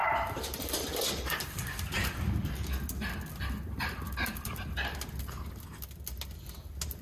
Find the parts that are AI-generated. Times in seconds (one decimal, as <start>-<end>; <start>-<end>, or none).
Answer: 0.0-1.9